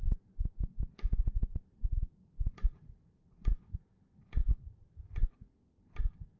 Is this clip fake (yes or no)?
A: no